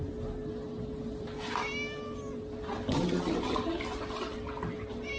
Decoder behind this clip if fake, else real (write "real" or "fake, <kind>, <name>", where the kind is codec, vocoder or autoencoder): real